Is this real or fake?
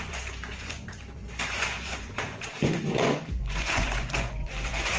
fake